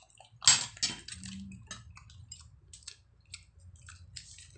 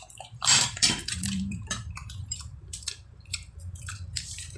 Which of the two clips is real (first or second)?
first